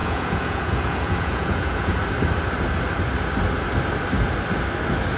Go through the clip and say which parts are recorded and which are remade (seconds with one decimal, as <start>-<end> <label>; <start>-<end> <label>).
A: 0.0-2.0 remade; 2.0-5.2 recorded